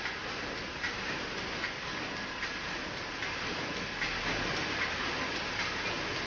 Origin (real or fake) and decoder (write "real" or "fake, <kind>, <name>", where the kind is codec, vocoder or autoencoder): real